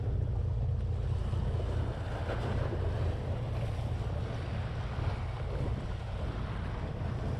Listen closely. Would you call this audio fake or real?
real